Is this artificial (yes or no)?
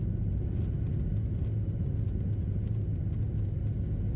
no